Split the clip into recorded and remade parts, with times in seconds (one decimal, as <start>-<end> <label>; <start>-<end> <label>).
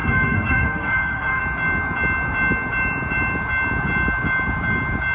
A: 0.0-1.4 remade; 1.4-5.1 recorded